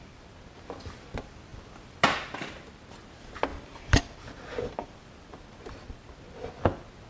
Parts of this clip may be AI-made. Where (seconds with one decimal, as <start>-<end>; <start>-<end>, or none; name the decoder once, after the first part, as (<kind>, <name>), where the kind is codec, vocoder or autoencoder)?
3.5-4.0 (vocoder, BigVGAN v2)